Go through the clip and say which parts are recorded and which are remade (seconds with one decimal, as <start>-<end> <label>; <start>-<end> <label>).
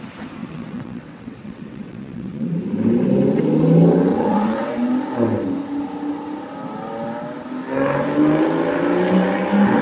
0.0-0.4 recorded; 0.4-2.5 remade; 2.5-4.1 recorded; 4.1-4.9 remade; 4.9-9.8 recorded